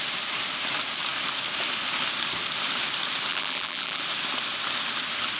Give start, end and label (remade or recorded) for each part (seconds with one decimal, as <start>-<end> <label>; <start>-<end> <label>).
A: 0.0-3.3 recorded; 3.3-4.0 remade; 4.0-5.4 recorded